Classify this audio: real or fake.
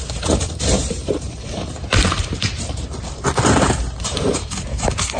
fake